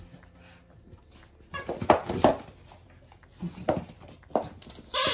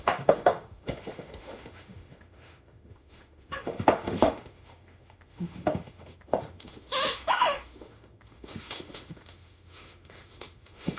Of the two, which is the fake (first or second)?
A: second